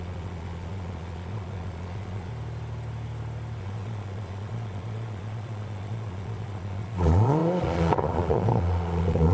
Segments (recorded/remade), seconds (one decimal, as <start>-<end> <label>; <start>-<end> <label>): 0.0-2.3 remade; 2.3-3.6 recorded; 3.6-9.3 remade